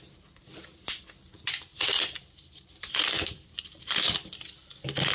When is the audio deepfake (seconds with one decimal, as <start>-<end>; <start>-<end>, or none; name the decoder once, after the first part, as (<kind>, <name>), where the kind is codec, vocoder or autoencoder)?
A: 1.7-5.1 (vocoder, BigVGAN v2)